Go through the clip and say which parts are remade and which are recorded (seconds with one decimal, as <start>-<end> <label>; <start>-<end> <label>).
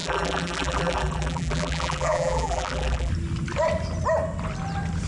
0.0-3.1 remade; 3.1-5.1 recorded